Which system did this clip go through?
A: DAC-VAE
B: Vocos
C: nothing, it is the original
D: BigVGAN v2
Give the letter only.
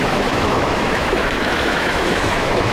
A